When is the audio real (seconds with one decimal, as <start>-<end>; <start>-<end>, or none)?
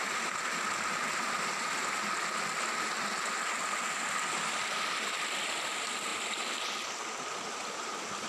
0.0-8.3